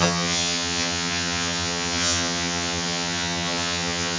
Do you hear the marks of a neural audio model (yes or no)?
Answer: yes